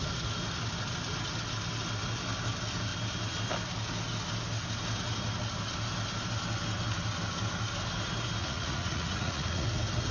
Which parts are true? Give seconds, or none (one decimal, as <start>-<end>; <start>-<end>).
0.0-8.4; 9.7-10.1